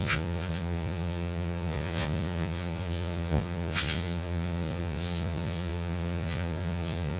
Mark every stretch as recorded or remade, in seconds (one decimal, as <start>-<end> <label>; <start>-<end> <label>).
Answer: 0.0-7.2 remade